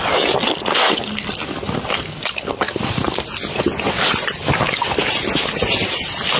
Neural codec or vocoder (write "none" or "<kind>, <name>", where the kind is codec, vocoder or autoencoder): none